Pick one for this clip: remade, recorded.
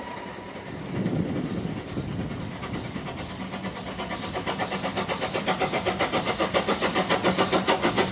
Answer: recorded